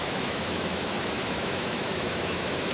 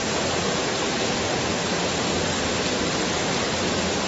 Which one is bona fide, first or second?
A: second